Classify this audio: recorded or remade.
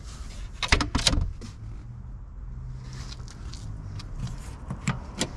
recorded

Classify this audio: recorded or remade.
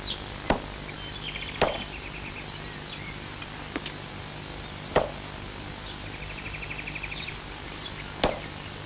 recorded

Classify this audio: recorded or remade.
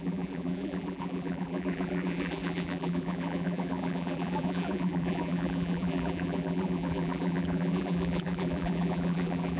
remade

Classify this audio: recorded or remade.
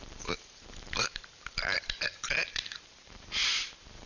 remade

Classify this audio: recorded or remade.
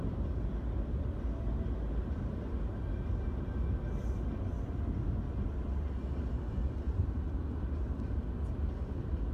remade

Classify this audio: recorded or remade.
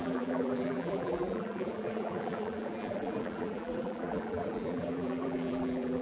remade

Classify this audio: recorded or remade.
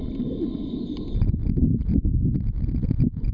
recorded